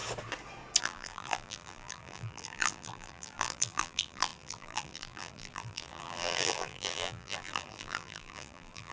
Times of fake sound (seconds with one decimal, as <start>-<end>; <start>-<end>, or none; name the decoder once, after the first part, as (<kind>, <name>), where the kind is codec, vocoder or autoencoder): 0.8-8.9 (vocoder, BigVGAN v2)